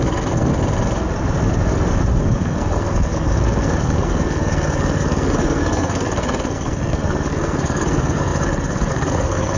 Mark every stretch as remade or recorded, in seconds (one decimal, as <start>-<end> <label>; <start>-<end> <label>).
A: 0.0-0.5 remade; 0.5-2.2 recorded; 2.2-9.6 remade